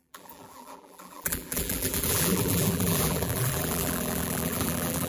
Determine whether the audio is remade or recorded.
remade